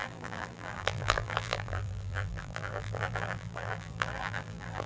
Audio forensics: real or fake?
fake